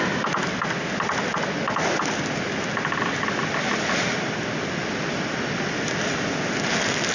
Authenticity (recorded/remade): recorded